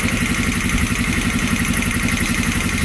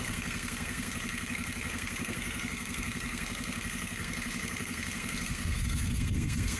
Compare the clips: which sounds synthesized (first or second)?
second